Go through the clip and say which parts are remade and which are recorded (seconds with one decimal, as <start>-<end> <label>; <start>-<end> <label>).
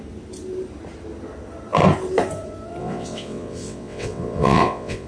0.0-2.8 recorded; 2.8-5.1 remade